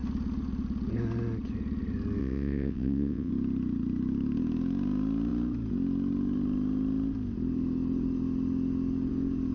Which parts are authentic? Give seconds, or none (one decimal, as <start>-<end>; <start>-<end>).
0.0-2.2; 3.3-9.5